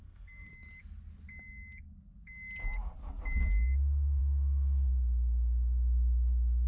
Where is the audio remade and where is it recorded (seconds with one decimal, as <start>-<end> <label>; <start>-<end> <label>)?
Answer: 0.0-0.5 remade; 0.5-4.2 recorded; 4.2-6.7 remade